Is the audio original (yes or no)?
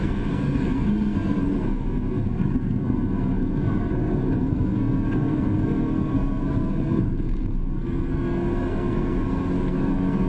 no